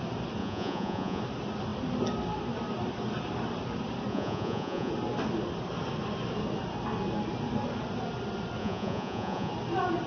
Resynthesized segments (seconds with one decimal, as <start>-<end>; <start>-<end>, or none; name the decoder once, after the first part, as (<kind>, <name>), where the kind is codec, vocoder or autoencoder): 0.4-1.2 (vocoder, Vocos); 4.1-4.9; 8.6-9.5